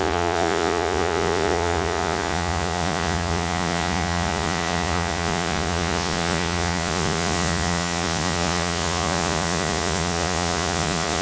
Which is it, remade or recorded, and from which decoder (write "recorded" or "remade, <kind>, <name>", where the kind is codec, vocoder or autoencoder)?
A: remade, vocoder, Vocos